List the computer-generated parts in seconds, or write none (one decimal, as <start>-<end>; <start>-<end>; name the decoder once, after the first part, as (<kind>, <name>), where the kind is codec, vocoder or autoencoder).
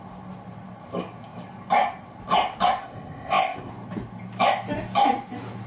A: 2.8-3.7 (codec, ZipCodec)